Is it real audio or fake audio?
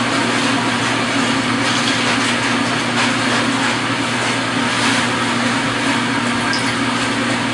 real